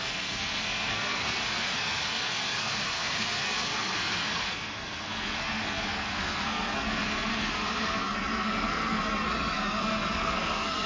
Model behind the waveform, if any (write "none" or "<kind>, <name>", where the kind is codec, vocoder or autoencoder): codec, SNAC